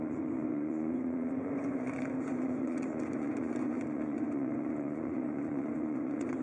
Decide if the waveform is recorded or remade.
remade